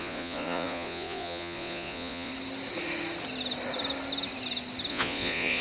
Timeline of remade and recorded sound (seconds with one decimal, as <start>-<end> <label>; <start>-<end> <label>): 0.0-2.3 remade; 2.3-4.9 recorded; 4.9-5.6 remade